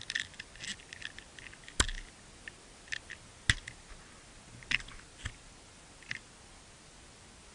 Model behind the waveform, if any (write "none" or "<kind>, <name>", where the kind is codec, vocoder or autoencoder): none